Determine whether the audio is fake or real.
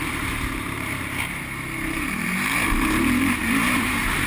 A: fake